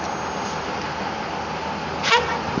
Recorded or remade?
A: recorded